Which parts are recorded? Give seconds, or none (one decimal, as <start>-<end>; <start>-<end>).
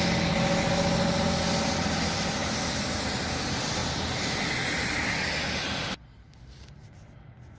0.0-7.6